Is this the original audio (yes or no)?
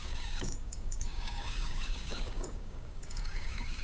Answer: no